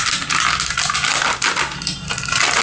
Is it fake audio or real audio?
real